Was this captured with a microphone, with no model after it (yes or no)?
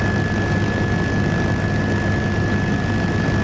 yes